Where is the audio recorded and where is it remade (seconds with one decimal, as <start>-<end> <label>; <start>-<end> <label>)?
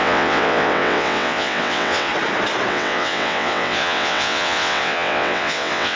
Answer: 0.0-2.1 remade; 2.1-2.7 recorded; 2.7-6.0 remade